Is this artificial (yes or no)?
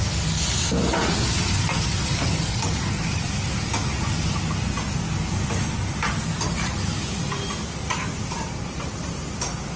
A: no